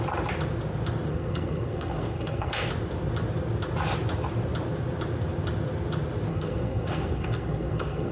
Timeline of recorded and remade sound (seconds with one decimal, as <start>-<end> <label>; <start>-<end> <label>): 0.0-1.1 recorded; 1.1-2.7 remade; 2.7-6.3 recorded; 6.3-8.1 remade